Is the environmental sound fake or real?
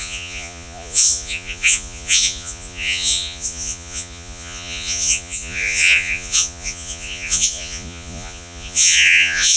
fake